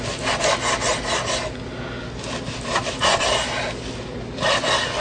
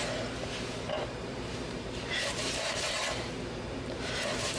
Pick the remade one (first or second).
second